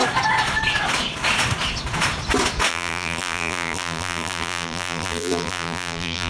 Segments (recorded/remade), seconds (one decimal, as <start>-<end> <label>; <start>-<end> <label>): 0.0-2.7 recorded; 2.7-6.3 remade